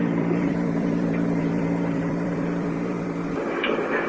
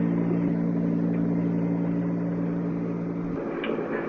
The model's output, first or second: first